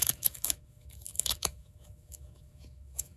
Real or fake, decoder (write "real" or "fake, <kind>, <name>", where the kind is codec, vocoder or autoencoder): fake, autoencoder, DAC-VAE